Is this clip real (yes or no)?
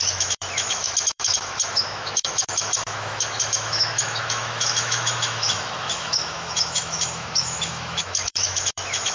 no